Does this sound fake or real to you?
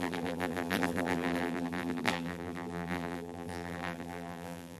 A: fake